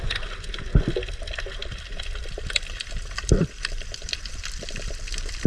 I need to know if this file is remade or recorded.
recorded